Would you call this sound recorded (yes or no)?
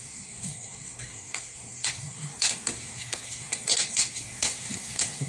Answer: no